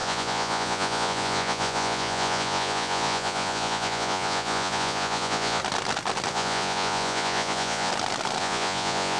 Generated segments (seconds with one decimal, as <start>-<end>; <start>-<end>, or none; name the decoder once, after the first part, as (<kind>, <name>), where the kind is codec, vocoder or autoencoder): 0.0-5.6 (vocoder, Vocos); 6.3-7.9; 8.4-9.2